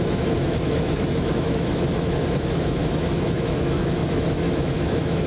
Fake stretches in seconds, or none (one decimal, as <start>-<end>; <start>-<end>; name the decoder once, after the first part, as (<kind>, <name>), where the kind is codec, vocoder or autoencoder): 0.0-5.3 (autoencoder, DAC-VAE)